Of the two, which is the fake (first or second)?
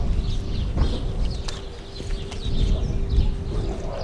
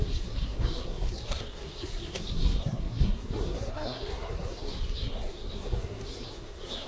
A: second